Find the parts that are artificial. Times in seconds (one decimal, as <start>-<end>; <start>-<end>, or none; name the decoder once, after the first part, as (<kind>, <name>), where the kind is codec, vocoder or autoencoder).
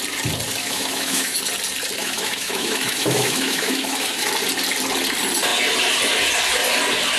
0.6-1.4 (autoencoder, DAC-VAE); 2.0-4.3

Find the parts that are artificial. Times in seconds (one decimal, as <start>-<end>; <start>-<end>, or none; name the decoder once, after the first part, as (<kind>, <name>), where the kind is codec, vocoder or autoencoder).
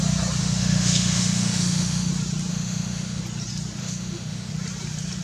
0.4-2.1 (autoencoder, DAC-VAE); 2.5-3.2; 3.8-4.5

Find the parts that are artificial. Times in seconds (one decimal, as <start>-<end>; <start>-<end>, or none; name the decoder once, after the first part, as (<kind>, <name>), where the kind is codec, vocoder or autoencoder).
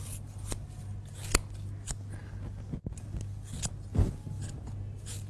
none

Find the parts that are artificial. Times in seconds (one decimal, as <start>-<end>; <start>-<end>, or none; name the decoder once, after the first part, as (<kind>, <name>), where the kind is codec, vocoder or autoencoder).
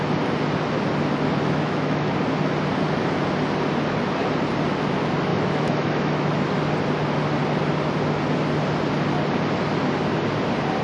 1.3-2.1 (autoencoder, DAC-VAE); 5.3-6.3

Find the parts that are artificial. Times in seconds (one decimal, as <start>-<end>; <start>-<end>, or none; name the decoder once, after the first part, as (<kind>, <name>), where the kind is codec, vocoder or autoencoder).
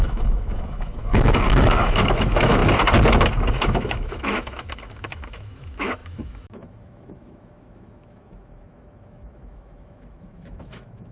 0.0-2.6 (autoencoder, DAC-VAE); 3.5-11.1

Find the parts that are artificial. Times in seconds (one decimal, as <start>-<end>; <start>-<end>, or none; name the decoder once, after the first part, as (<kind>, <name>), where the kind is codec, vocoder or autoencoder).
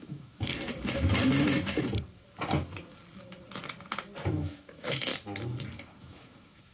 0.0-0.5 (autoencoder, DAC-VAE); 4.3-5.1; 6.0-6.7